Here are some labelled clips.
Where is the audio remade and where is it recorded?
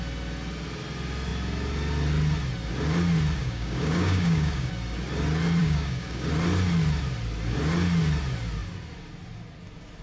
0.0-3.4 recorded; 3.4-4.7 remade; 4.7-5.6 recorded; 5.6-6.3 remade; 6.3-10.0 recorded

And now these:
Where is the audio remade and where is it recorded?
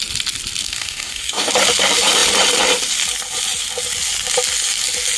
0.0-0.6 recorded; 0.6-1.5 remade; 1.5-5.2 recorded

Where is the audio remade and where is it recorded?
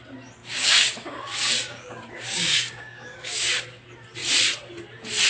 0.0-0.4 recorded; 0.4-3.6 remade; 3.6-5.3 recorded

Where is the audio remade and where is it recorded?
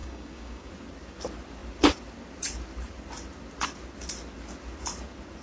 0.0-0.7 remade; 0.7-5.4 recorded